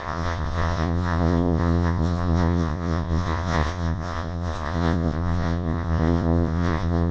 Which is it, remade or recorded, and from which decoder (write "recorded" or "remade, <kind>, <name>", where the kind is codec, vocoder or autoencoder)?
remade, vocoder, Vocos